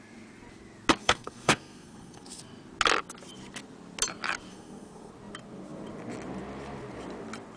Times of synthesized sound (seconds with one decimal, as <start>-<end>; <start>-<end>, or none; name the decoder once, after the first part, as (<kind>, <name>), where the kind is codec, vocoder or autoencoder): 1.0-2.4 (codec, SNAC); 4.5-5.1